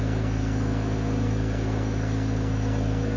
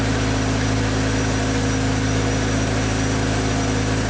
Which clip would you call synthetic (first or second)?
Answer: first